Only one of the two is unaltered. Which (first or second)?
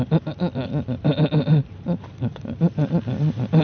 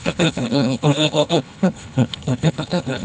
first